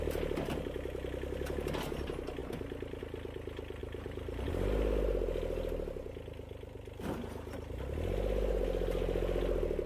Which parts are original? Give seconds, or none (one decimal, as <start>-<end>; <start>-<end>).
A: 0.0-3.8; 4.5-9.9